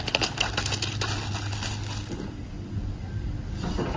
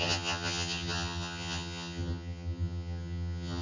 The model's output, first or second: second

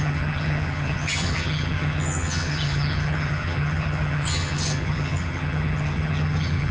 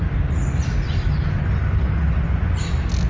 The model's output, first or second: first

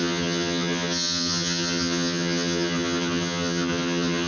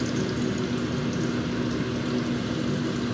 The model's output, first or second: first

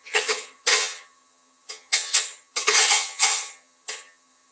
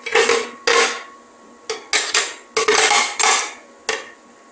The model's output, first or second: first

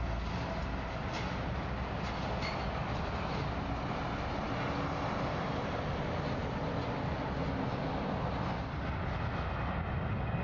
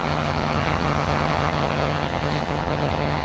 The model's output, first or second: second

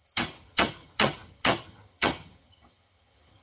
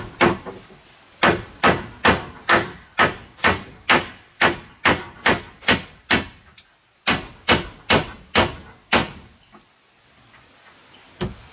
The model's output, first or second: first